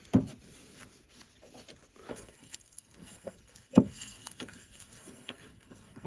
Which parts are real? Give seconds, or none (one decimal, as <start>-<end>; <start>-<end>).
0.0-2.1